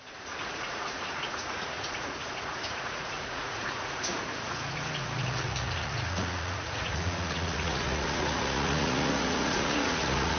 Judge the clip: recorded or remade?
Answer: remade